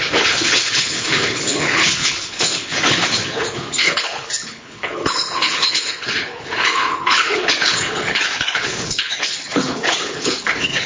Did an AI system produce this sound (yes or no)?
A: yes